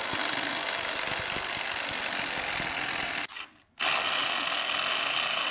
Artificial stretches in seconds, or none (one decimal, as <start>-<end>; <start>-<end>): none